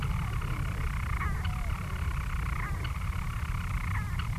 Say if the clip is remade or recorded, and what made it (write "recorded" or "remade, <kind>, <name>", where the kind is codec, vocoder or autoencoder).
recorded